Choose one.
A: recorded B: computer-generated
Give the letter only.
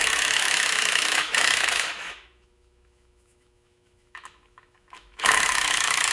B